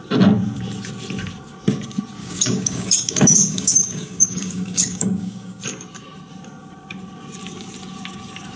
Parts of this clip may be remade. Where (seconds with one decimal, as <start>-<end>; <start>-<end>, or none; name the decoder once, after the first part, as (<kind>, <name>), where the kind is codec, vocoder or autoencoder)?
2.2-5.6 (codec, DAC)